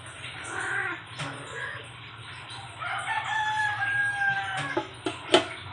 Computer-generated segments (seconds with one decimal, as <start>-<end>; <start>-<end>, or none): 0.0-4.0